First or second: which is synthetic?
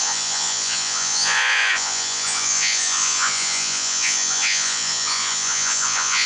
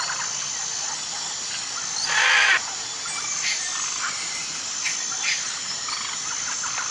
first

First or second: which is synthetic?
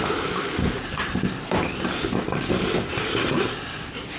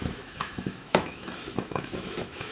second